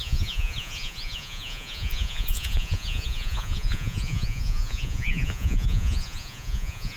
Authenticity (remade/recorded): remade